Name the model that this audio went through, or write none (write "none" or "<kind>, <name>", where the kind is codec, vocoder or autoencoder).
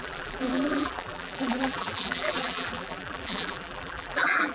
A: vocoder, BigVGAN v2